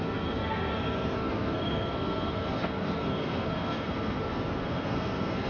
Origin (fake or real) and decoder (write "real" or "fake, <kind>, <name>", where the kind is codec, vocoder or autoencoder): fake, codec, SNAC